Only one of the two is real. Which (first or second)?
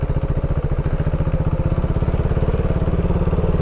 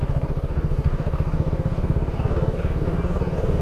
first